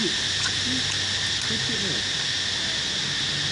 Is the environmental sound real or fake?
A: real